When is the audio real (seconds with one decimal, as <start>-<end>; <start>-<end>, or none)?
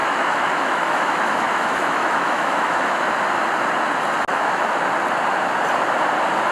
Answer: 3.1-4.3; 4.8-6.5